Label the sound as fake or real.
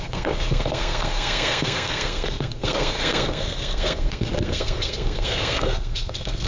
fake